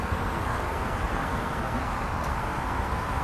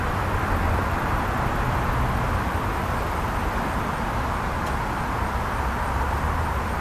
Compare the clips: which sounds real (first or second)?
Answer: second